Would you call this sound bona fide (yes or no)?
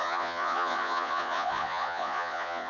no